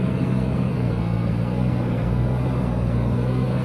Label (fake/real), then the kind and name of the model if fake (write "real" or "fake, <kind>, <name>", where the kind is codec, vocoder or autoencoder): fake, codec, SNAC